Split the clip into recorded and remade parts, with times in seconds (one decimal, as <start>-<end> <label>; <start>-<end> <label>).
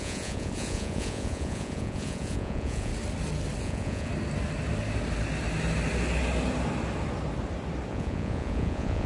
0.0-2.9 remade; 2.9-3.6 recorded; 3.6-4.1 remade; 4.1-7.9 recorded; 7.9-9.1 remade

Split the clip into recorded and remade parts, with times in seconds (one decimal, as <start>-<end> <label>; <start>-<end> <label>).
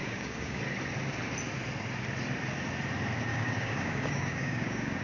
0.0-0.6 remade; 0.6-3.3 recorded; 3.3-5.0 remade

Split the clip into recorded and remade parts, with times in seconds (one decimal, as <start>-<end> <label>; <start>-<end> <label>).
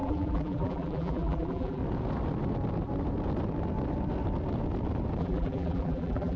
0.0-1.8 remade; 1.8-5.2 recorded; 5.2-6.4 remade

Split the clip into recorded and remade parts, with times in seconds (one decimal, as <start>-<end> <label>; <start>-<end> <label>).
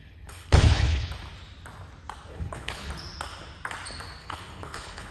0.0-1.1 remade; 1.1-2.3 recorded; 2.3-2.9 remade; 2.9-4.2 recorded; 4.2-5.1 remade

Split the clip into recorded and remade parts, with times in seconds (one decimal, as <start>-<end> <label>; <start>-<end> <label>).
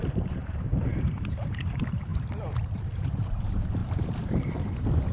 0.0-2.1 remade; 2.1-2.8 recorded; 2.8-5.1 remade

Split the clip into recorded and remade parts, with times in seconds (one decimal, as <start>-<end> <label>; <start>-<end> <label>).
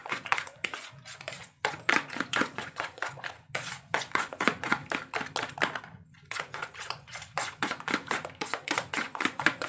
0.0-4.8 remade; 4.8-5.8 recorded; 5.8-9.7 remade